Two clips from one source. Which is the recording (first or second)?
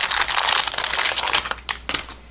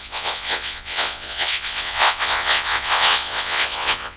first